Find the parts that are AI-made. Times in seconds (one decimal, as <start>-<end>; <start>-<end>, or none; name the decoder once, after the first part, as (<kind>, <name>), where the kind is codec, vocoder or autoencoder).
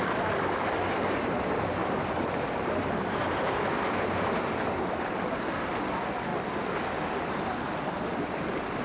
1.8-3.6 (vocoder, BigVGAN v2)